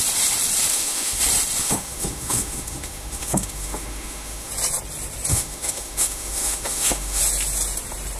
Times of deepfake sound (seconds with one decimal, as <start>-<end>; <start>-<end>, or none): 0.7-1.2; 1.6-4.5; 5.3-7.2